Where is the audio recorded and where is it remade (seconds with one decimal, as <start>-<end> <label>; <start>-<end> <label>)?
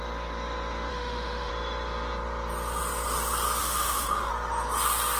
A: 0.0-0.9 recorded; 0.9-1.5 remade; 1.5-3.6 recorded; 3.6-4.3 remade; 4.3-5.2 recorded